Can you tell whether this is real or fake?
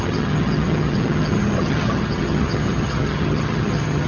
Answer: fake